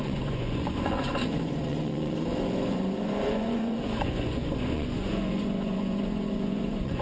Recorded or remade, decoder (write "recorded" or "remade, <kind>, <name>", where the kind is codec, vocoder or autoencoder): remade, vocoder, Vocos